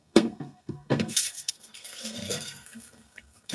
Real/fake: fake